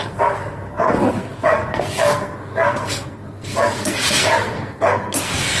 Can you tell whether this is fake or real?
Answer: fake